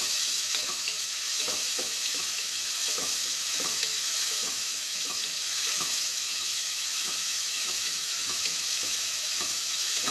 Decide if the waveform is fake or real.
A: fake